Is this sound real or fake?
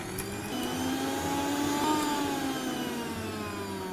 real